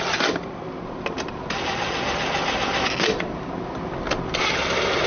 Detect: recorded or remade recorded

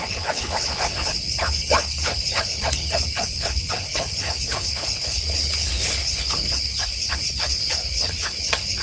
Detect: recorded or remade remade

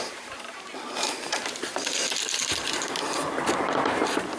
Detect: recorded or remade remade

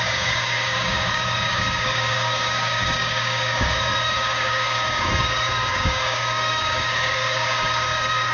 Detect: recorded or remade remade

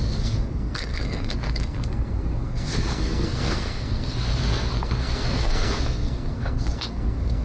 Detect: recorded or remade remade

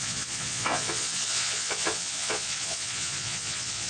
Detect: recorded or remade remade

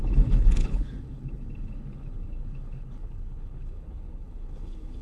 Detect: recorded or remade remade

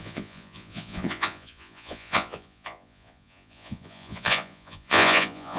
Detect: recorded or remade remade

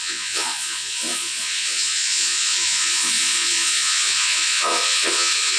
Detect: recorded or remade remade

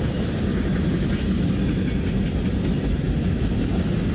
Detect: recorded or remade recorded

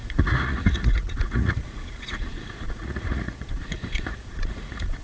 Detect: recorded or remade remade